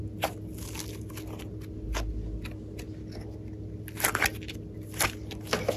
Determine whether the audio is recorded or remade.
recorded